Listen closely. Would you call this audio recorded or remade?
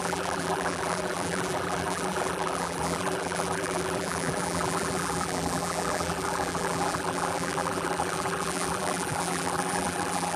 remade